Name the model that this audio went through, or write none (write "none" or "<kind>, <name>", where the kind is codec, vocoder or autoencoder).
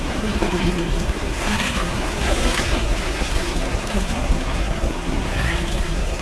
codec, SNAC